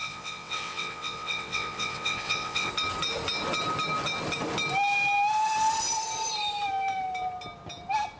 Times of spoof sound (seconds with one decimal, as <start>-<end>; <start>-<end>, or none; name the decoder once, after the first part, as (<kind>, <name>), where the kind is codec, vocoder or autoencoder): 0.0-2.7 (vocoder, WaveNeXt)